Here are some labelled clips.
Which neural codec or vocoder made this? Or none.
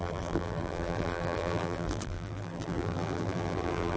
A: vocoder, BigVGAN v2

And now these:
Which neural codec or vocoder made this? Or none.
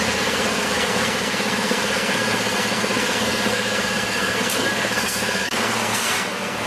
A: codec, SNAC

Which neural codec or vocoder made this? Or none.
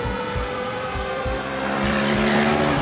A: vocoder, BigVGAN v2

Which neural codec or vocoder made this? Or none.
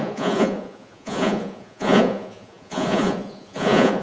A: vocoder, Vocos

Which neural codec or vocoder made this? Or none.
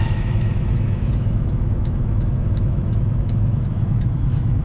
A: autoencoder, DAC-VAE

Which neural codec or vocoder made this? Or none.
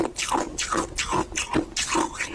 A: none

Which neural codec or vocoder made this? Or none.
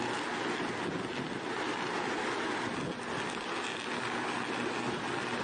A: none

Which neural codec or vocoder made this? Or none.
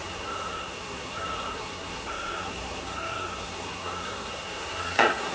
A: codec, SNAC